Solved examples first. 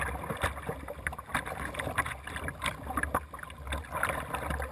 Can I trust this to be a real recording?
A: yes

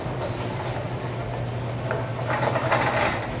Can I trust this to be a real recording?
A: yes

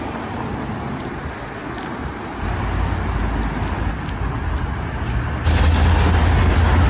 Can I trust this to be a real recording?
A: yes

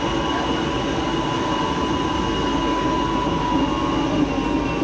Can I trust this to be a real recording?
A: yes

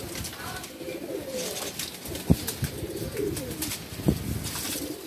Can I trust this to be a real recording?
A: yes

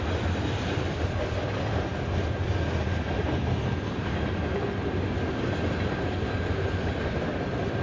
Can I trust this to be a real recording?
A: yes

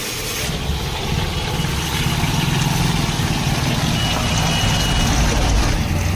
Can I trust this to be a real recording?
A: yes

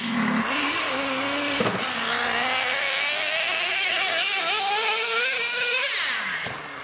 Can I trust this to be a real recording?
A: yes